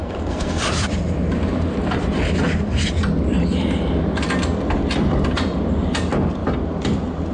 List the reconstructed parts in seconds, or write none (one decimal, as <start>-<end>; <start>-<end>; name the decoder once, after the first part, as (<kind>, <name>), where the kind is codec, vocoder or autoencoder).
0.0-0.6 (codec, SNAC)